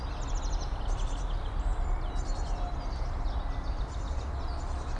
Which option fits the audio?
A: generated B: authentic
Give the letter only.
B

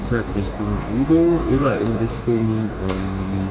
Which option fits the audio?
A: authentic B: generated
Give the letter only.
B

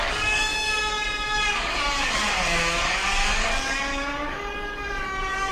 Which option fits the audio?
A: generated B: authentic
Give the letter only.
A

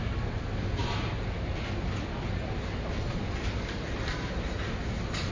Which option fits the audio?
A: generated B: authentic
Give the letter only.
B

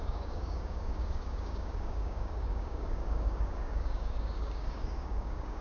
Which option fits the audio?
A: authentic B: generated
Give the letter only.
B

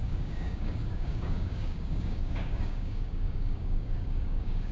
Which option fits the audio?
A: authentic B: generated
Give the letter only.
B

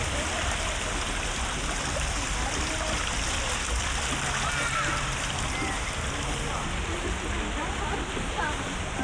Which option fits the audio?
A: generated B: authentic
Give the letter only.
B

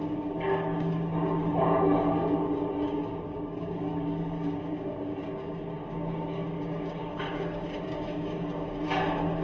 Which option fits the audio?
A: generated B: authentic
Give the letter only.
A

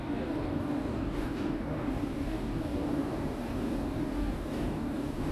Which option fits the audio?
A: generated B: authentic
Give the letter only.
A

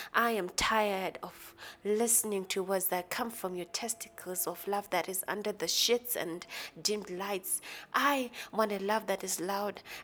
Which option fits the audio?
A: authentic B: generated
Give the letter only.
A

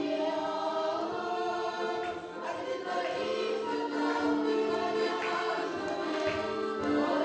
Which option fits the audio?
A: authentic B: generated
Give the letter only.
A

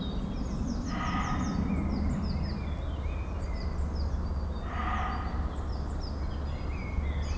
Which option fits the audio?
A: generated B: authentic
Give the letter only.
B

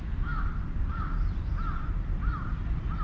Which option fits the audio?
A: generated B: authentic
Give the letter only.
B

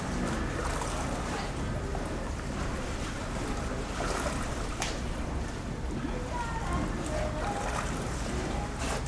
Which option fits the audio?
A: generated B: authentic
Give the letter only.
B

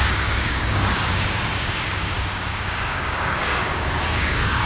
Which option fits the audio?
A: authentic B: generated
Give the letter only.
B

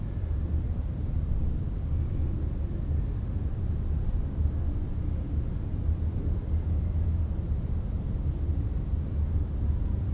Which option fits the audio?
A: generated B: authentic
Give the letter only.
B